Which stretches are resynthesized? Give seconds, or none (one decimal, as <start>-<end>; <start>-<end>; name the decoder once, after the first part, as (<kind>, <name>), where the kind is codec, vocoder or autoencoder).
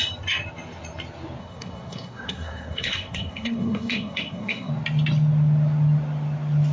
1.4-4.7 (codec, SNAC)